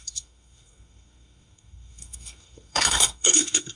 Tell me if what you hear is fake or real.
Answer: fake